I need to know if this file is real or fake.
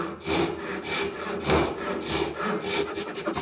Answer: real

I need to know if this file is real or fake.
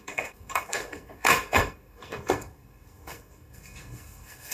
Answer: fake